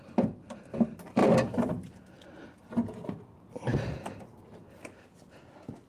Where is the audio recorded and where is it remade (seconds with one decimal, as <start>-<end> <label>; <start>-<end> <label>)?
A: 0.0-5.9 recorded